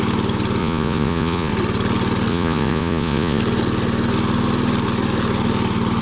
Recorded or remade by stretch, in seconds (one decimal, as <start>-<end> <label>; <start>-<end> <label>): 0.0-0.6 recorded; 0.6-1.5 remade; 1.5-2.3 recorded; 2.3-3.4 remade; 3.4-6.0 recorded